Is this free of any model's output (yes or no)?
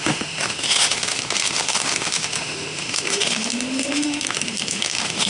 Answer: no